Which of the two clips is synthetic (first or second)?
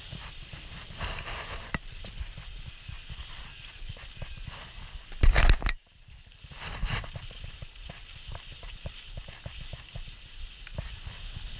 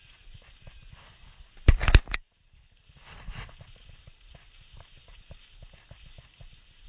first